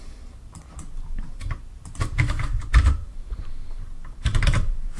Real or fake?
fake